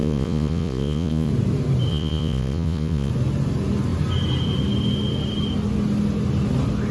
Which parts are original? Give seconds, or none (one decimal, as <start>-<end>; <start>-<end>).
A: 1.3-1.9; 3.1-6.9